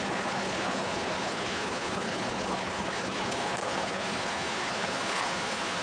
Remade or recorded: remade